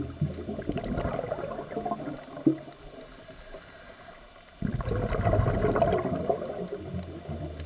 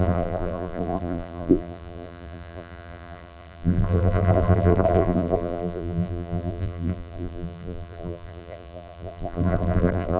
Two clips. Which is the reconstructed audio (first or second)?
second